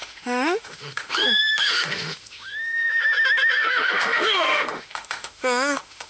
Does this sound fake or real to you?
fake